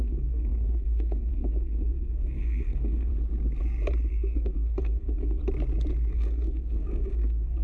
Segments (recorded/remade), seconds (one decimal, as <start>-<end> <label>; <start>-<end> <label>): 0.0-3.1 remade; 3.1-4.1 recorded; 4.1-5.4 remade; 5.4-6.1 recorded; 6.1-7.6 remade